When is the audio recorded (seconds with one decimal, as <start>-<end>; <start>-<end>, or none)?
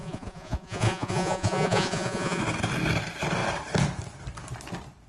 2.4-5.1